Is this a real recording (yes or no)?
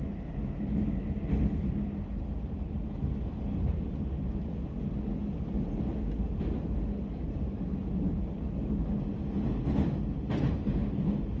yes